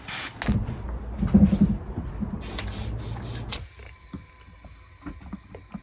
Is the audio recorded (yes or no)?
yes